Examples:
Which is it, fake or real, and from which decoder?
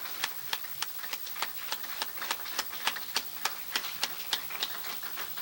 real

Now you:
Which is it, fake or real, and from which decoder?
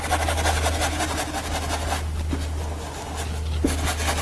real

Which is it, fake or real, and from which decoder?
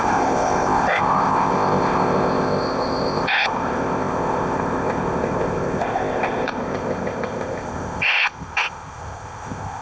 fake, codec, ZipCodec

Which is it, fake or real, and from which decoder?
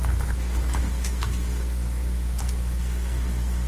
fake, codec, SNAC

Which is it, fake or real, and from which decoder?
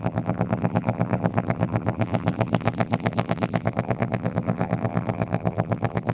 fake, vocoder, BigVGAN v2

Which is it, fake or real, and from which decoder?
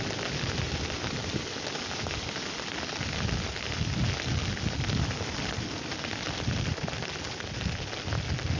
real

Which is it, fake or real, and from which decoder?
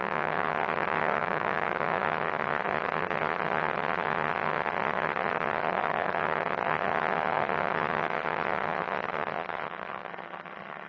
fake, vocoder, HiFi-GAN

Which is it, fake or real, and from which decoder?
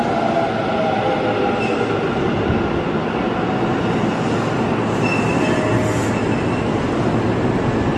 real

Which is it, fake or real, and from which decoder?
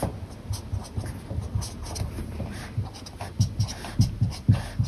real